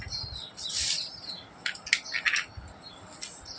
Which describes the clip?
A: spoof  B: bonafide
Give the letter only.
B